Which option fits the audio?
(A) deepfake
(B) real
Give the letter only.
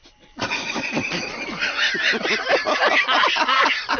B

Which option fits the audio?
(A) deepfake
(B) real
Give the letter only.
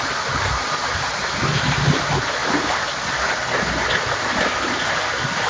B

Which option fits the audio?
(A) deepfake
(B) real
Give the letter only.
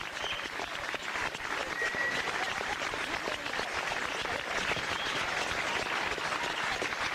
B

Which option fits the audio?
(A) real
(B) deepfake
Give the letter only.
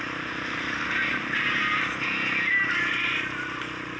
A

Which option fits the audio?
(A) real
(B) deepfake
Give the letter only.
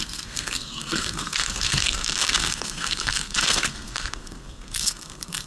B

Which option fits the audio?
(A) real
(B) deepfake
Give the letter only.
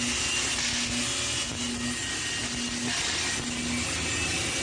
A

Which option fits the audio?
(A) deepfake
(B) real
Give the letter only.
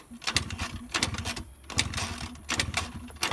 B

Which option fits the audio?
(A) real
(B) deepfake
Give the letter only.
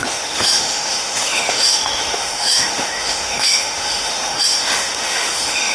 B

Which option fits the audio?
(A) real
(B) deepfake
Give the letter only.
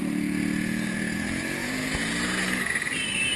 B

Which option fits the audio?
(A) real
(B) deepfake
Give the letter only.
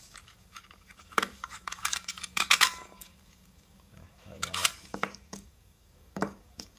B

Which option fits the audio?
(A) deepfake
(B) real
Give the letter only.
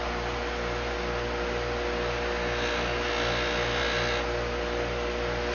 B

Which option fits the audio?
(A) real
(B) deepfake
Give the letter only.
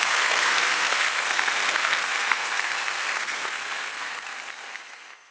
B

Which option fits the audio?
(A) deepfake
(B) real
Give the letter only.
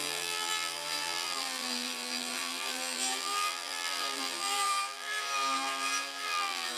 A